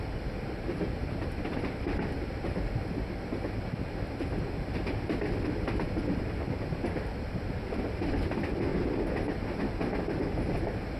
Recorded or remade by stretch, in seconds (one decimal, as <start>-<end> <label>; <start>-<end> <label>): 0.0-11.0 recorded